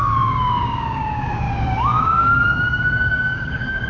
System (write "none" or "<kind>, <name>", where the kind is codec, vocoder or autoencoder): codec, DAC